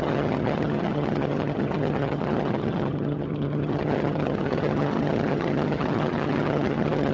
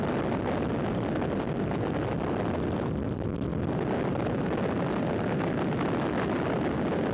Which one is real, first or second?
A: second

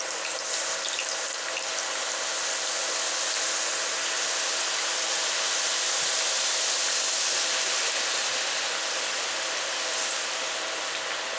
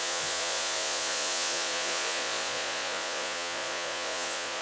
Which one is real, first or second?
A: first